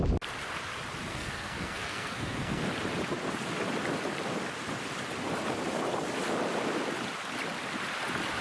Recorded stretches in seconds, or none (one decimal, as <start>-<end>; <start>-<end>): 0.0-1.1; 2.6-8.4